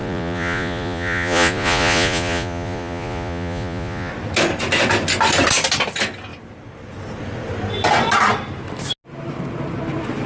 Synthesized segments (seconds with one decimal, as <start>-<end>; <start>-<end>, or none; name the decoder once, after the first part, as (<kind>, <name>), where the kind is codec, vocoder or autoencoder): 0.0-4.1 (vocoder, Vocos)

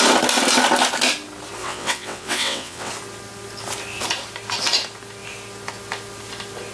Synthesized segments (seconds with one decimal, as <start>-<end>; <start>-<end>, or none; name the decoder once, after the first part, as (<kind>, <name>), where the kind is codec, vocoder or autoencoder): 1.6-2.9 (vocoder, WaveNeXt)